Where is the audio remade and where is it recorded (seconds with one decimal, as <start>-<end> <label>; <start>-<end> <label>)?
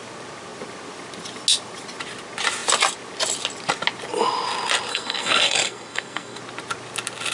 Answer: 0.0-4.9 recorded; 4.9-6.4 remade; 6.4-7.3 recorded